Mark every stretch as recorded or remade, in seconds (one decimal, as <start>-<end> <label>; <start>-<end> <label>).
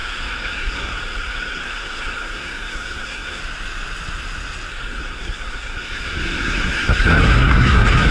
0.0-3.4 remade; 3.4-4.7 recorded; 4.7-8.1 remade